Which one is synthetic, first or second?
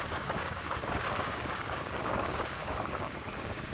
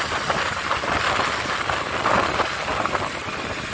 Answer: first